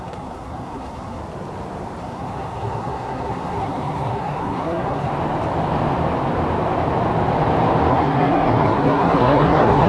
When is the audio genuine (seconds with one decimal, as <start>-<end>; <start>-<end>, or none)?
1.2-2.0; 5.1-7.9